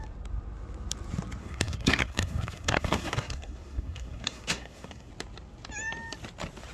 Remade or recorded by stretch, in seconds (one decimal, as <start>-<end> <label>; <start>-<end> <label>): 0.0-1.4 recorded; 1.4-5.1 remade; 5.1-6.7 recorded